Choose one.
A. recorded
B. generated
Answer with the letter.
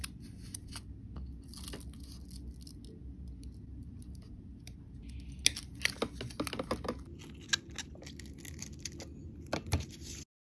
A